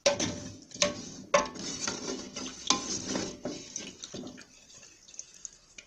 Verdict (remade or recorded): recorded